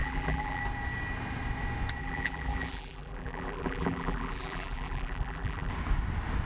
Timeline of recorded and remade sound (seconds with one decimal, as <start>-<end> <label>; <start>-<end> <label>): 0.0-0.6 remade; 0.6-2.0 recorded; 2.0-5.7 remade; 5.7-6.5 recorded